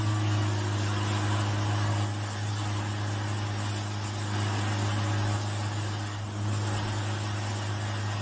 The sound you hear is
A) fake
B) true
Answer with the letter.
B